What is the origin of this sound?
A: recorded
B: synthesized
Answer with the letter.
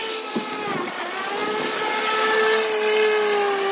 A